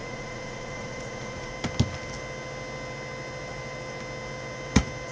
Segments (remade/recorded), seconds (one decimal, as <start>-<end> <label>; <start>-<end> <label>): 0.0-1.5 remade; 1.5-5.1 recorded